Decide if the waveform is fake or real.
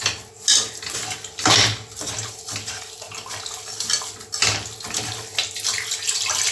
real